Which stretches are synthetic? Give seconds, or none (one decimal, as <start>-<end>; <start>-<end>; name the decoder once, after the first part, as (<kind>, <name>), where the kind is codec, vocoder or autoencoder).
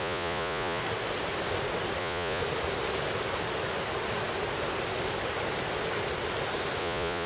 0.0-0.8 (vocoder, Vocos); 2.0-2.4; 6.8-7.3